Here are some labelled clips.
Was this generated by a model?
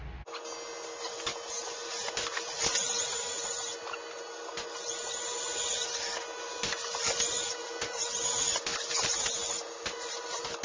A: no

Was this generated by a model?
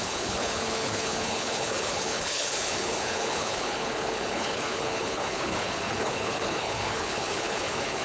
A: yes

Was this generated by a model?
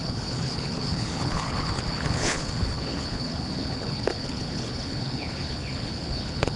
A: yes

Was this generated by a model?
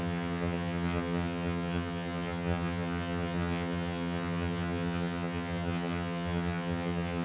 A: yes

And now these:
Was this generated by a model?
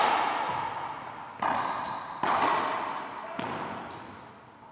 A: no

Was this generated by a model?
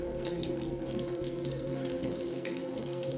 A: yes